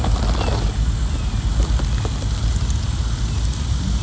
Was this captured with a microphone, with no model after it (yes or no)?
yes